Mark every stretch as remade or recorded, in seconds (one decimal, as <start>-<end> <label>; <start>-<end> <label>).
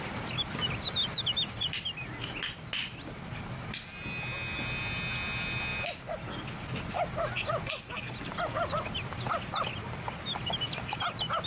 0.0-11.5 recorded